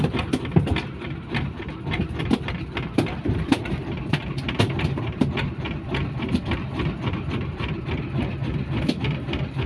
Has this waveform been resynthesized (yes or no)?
yes